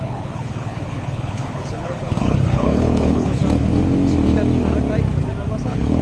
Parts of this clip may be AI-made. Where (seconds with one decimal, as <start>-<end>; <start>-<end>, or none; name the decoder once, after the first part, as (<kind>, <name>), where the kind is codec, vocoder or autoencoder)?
0.0-3.4 (codec, HILCodec); 5.6-6.0